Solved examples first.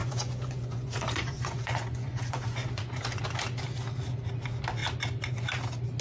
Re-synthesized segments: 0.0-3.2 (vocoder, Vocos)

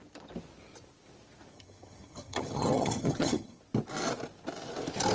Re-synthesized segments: 1.5-3.6 (vocoder, HiFi-GAN)

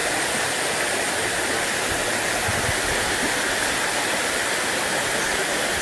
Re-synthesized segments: none

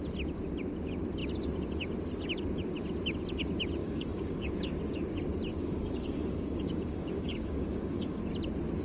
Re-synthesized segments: 3.8-4.5 (codec, DAC); 5.5-8.2

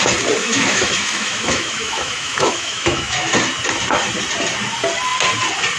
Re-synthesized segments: 0.4-3.3 (autoencoder, DAC-VAE)